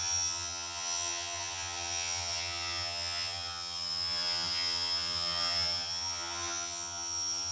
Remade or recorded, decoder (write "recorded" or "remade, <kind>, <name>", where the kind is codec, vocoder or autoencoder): remade, vocoder, HiFi-GAN